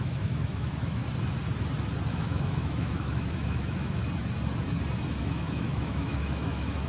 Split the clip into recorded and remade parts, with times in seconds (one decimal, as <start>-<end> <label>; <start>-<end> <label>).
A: 0.0-1.0 remade; 1.0-2.1 recorded; 2.1-4.0 remade; 4.0-5.2 recorded; 5.2-6.9 remade